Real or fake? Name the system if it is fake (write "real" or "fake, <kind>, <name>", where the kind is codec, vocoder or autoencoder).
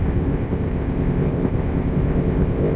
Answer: fake, codec, ZipCodec